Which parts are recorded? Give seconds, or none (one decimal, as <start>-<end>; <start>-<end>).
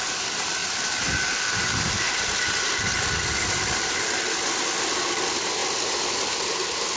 0.6-2.1; 5.6-6.4